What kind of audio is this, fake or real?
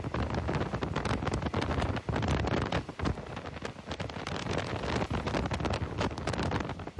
real